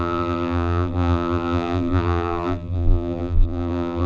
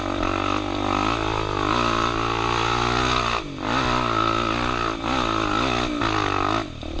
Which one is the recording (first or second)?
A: second